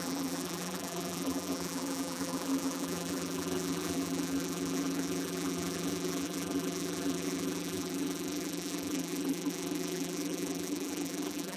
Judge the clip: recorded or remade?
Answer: remade